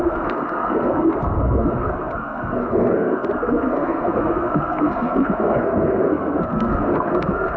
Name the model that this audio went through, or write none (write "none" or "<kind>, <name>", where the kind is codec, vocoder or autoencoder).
codec, SNAC